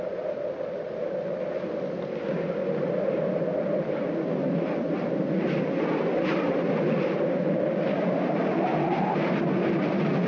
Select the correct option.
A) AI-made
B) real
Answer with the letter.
B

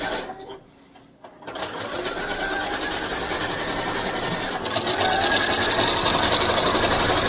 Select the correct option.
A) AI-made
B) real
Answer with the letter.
B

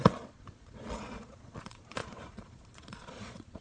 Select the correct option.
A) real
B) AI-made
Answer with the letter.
B